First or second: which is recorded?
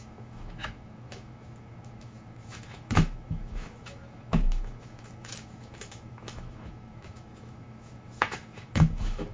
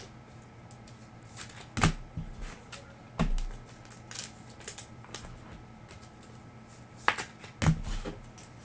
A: second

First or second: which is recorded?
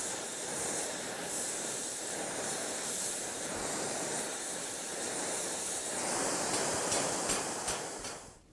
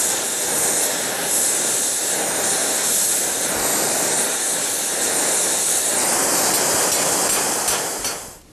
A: second